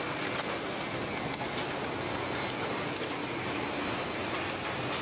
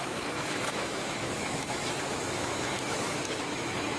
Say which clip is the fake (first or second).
second